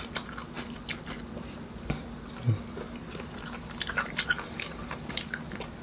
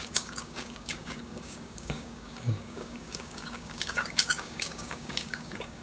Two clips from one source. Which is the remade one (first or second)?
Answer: second